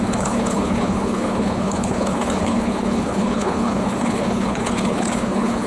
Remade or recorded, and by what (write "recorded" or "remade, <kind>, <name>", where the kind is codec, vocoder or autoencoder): remade, codec, HILCodec